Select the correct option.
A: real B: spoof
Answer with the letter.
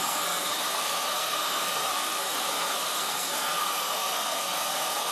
B